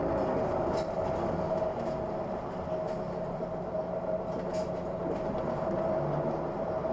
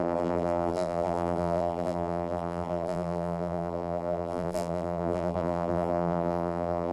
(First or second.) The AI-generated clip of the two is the second